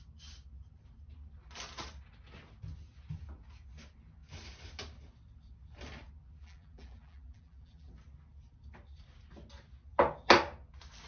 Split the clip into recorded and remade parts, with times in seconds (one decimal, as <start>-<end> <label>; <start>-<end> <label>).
0.0-6.4 recorded; 6.4-7.9 remade; 7.9-11.1 recorded